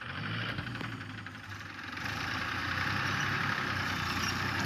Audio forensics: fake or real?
fake